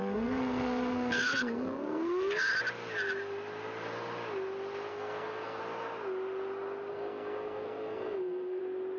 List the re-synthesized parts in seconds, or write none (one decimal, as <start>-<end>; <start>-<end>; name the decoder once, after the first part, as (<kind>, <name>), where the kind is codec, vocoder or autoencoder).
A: 0.0-2.5 (codec, SNAC); 4.9-5.6; 6.9-8.6

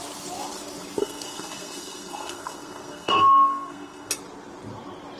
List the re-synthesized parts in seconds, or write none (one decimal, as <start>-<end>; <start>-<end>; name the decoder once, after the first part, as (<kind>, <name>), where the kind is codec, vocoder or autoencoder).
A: 1.0-4.1 (codec, SNAC)

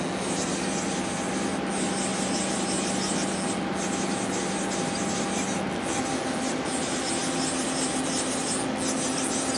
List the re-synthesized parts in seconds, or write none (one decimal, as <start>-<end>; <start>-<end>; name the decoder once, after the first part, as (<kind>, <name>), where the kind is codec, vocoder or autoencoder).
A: none

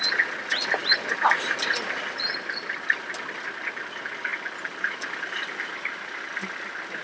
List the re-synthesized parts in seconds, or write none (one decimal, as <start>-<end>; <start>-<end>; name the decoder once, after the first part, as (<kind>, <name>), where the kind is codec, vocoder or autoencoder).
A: none

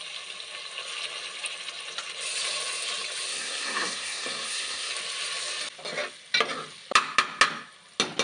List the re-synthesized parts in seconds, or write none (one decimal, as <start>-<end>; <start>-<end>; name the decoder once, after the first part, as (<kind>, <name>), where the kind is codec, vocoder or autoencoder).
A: 3.3-4.9 (codec, SNAC)